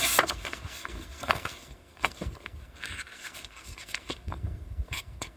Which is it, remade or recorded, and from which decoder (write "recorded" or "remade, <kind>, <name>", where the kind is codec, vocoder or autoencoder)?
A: remade, codec, SNAC